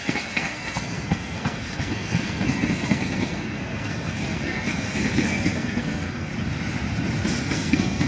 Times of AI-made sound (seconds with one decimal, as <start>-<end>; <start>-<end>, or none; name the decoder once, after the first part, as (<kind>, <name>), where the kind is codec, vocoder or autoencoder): 0.0-6.3 (codec, SNAC); 7.4-8.1